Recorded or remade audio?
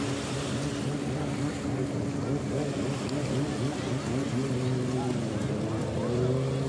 recorded